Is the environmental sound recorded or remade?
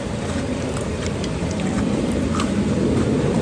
remade